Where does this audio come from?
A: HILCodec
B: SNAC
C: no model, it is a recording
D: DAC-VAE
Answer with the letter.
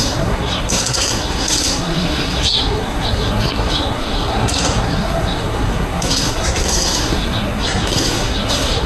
B